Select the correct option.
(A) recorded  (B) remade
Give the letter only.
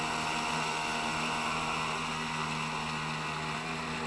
A